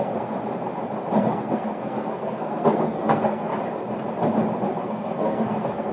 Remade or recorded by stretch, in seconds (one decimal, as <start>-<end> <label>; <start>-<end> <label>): 0.0-0.4 remade; 0.4-1.2 recorded; 1.2-3.5 remade; 3.5-4.8 recorded; 4.8-5.9 remade